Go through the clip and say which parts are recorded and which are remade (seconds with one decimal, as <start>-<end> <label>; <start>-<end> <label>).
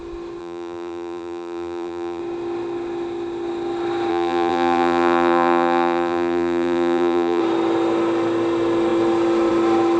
0.0-0.4 recorded; 0.4-2.2 remade; 2.2-4.1 recorded; 4.1-7.4 remade; 7.4-10.0 recorded